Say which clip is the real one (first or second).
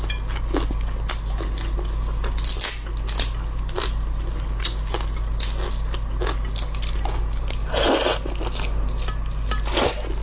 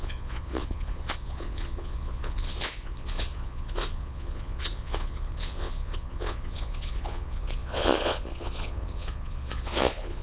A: first